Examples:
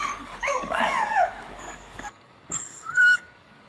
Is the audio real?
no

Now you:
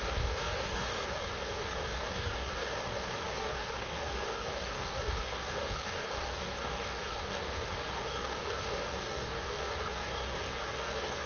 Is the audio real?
no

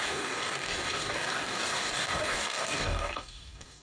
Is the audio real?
no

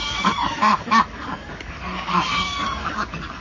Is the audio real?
no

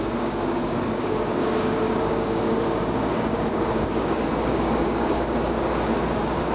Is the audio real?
no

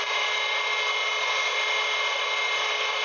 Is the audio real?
yes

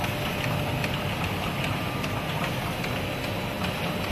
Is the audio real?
yes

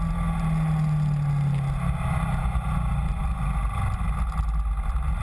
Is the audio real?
yes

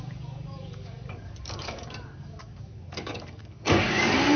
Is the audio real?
no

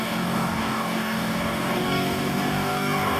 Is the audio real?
no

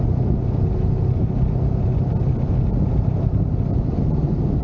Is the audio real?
yes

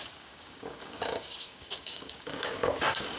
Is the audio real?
no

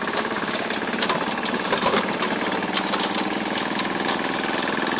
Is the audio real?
yes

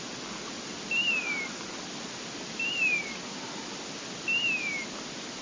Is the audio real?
yes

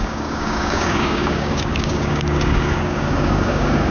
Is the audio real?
no